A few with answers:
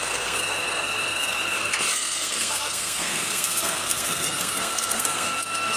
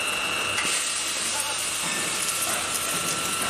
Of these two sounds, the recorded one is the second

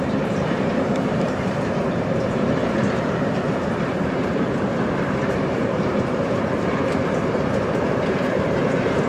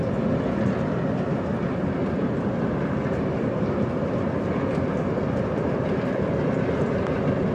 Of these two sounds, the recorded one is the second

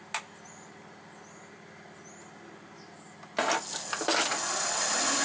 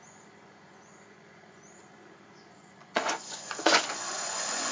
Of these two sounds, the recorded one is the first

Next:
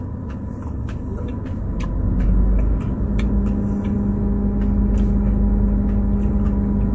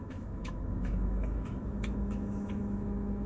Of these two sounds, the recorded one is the first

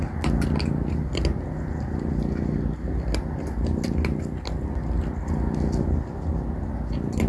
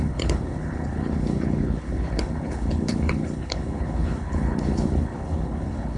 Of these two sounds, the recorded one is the first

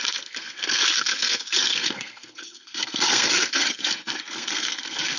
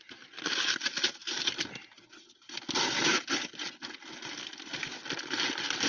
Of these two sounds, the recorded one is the second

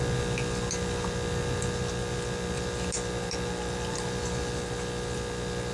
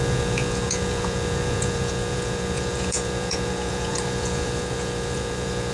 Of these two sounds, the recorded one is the first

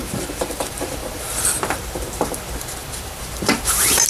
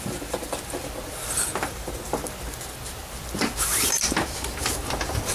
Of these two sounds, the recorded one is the second